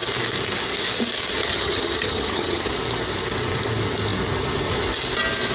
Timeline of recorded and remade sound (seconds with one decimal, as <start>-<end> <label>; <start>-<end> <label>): 0.0-1.4 recorded; 1.4-2.7 remade; 2.7-5.5 recorded